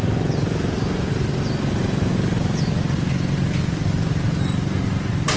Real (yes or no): yes